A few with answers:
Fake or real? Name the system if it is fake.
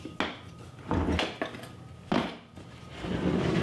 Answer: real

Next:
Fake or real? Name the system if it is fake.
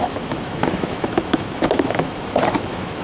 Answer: fake, autoencoder, DAC-VAE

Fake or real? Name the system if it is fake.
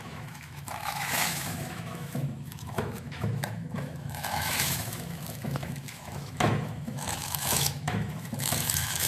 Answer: fake, autoencoder, DAC-VAE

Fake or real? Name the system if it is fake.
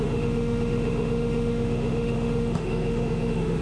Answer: fake, autoencoder, DAC-VAE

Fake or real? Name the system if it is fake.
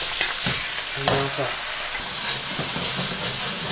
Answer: real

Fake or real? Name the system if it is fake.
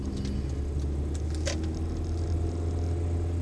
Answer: real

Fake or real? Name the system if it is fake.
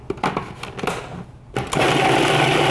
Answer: real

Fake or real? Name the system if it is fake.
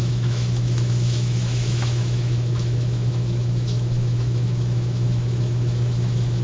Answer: fake, autoencoder, DAC-VAE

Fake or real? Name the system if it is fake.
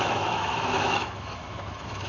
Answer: fake, autoencoder, DAC-VAE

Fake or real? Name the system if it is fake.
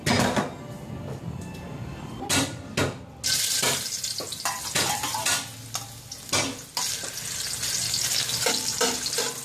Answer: real